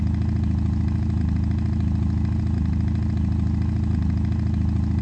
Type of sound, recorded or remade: recorded